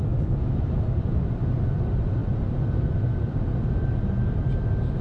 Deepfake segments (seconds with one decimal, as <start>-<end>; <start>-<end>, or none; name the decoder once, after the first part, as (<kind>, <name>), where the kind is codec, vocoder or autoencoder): 0.0-0.8 (autoencoder, DAC-VAE)